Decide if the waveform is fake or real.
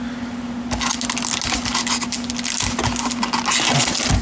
real